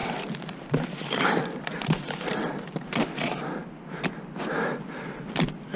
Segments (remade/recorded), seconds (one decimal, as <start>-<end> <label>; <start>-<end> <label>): 0.0-1.6 recorded; 1.6-3.6 remade; 3.6-4.9 recorded; 4.9-5.8 remade